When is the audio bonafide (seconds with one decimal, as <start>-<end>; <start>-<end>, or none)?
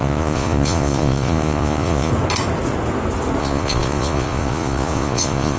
2.1-3.4